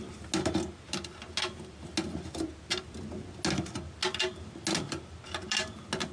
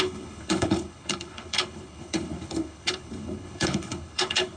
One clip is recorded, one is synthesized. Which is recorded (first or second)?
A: first